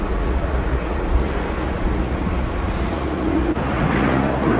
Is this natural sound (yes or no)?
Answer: no